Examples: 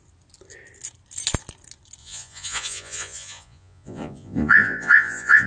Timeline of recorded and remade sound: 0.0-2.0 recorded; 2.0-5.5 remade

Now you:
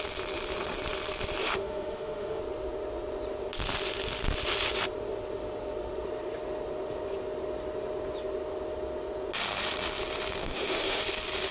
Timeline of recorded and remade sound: 0.0-1.4 recorded; 1.4-2.4 remade; 2.4-10.4 recorded; 10.4-11.0 remade; 11.0-11.5 recorded

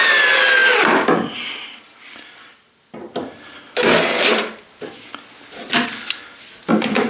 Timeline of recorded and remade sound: 0.0-7.1 recorded

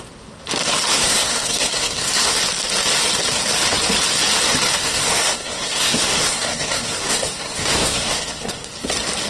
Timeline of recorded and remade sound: 0.0-0.9 recorded; 0.9-2.4 remade; 2.4-4.8 recorded; 4.8-8.7 remade; 8.7-9.3 recorded

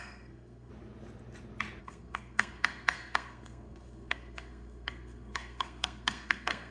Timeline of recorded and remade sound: 0.0-0.7 remade; 0.7-1.8 recorded; 1.8-6.7 remade

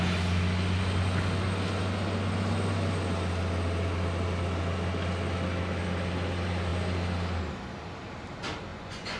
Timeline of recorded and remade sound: 0.0-8.7 recorded; 8.7-9.2 remade

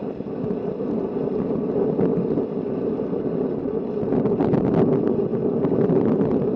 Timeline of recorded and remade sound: 0.0-6.6 recorded